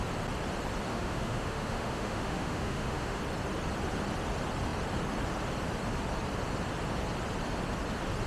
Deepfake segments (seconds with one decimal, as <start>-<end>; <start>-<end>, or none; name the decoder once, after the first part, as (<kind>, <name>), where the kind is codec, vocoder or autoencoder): 0.9-3.2 (autoencoder, DAC-VAE)